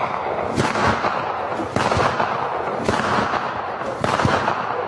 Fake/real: real